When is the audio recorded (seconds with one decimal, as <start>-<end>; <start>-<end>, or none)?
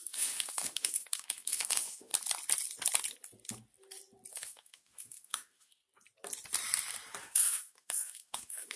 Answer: 2.1-4.3; 5.8-7.2